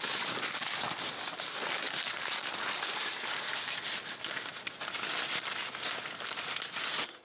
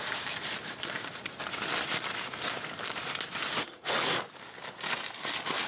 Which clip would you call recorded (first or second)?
first